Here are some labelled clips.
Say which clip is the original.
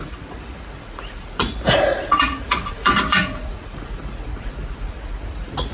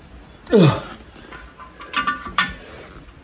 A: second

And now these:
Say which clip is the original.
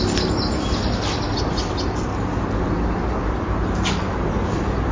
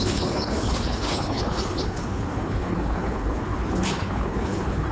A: first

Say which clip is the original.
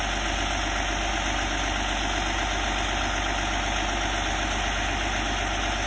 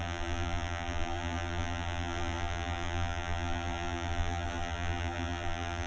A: first